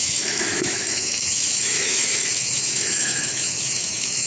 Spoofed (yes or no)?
yes